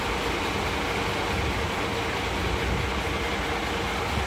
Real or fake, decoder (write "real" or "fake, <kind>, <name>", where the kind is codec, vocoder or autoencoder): real